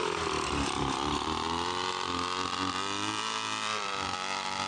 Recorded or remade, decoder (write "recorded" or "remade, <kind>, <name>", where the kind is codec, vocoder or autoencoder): remade, vocoder, BigVGAN v2